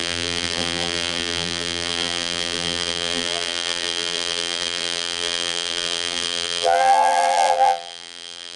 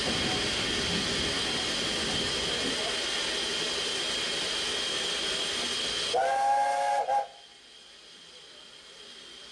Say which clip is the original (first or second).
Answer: second